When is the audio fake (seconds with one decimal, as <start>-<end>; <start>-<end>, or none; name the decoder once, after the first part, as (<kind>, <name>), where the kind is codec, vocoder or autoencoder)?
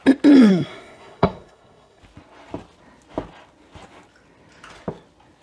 0.5-2.0 (codec, SNAC)